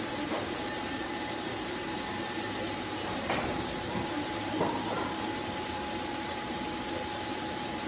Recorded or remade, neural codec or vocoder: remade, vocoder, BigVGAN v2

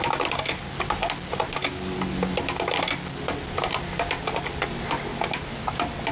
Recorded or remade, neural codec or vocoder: remade, vocoder, BigVGAN v2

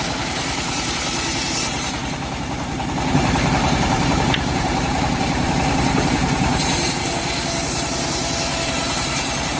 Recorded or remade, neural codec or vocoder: remade, vocoder, BigVGAN v2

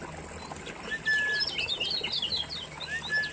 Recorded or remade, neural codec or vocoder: recorded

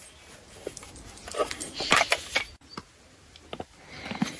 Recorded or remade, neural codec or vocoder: recorded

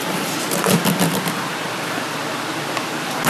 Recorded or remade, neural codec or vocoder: recorded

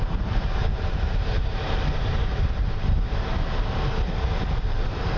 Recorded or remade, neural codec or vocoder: remade, vocoder, BigVGAN v2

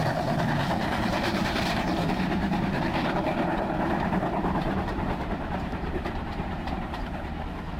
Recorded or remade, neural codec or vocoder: remade, vocoder, BigVGAN v2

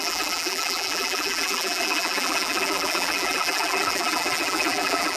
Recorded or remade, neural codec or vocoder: remade, vocoder, BigVGAN v2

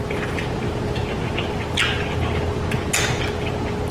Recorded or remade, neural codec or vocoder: recorded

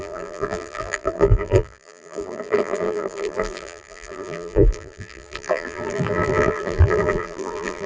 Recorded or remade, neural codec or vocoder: remade, vocoder, BigVGAN v2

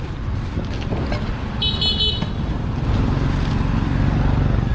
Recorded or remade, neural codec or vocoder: recorded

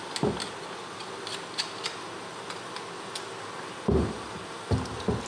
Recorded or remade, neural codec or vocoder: recorded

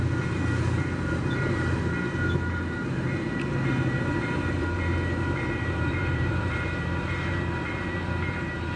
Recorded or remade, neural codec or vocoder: remade, vocoder, BigVGAN v2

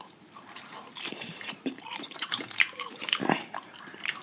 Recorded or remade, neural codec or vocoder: remade, vocoder, BigVGAN v2